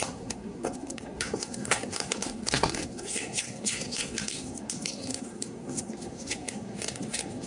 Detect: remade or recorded remade